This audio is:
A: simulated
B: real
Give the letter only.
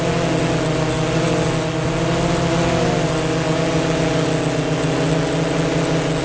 B